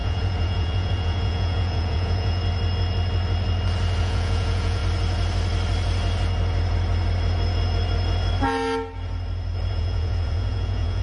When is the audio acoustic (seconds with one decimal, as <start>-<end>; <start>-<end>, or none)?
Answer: 2.4-4.0; 4.8-9.7